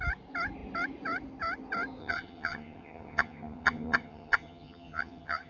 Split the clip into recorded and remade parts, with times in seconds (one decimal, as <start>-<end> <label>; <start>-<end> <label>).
0.0-2.0 recorded; 2.0-5.5 remade